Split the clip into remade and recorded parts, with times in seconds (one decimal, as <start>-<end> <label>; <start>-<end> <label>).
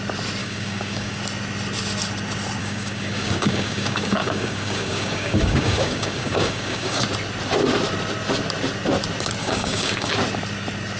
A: 0.0-0.4 recorded; 0.4-1.2 remade; 1.2-2.6 recorded; 2.6-7.0 remade; 7.0-9.4 recorded; 9.4-10.1 remade; 10.1-11.0 recorded